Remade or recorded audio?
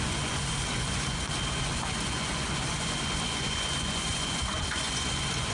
remade